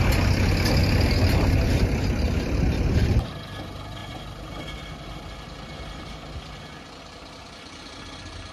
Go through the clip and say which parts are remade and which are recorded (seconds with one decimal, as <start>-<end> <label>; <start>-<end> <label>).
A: 0.0-8.5 recorded

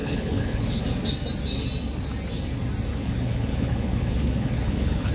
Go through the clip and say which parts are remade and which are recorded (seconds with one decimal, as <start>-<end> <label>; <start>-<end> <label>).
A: 0.0-0.8 remade; 0.8-2.9 recorded; 2.9-5.1 remade

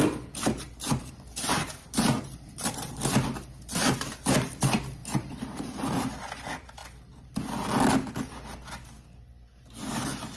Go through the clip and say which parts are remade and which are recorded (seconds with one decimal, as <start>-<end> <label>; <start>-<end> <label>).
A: 0.0-1.6 recorded; 1.6-3.0 remade; 3.0-5.0 recorded; 5.0-6.1 remade; 6.1-10.4 recorded

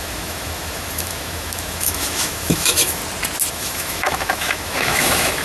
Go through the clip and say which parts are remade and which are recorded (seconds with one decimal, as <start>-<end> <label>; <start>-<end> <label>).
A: 0.0-3.0 remade; 3.0-3.5 recorded; 3.5-5.4 remade

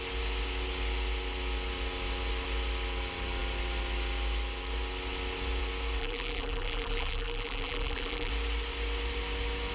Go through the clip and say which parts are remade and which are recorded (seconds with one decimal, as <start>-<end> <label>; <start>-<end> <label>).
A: 0.0-6.0 recorded; 6.0-8.3 remade; 8.3-9.7 recorded

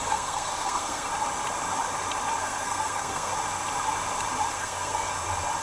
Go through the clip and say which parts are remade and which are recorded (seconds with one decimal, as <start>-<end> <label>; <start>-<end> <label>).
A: 0.0-1.1 remade; 1.1-2.4 recorded; 2.4-3.3 remade; 3.3-4.5 recorded; 4.5-5.1 remade; 5.1-5.6 recorded

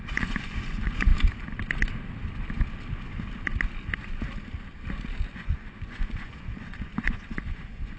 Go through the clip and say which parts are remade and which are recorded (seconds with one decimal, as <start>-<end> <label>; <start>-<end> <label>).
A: 0.0-1.1 remade; 1.1-5.3 recorded; 5.3-8.0 remade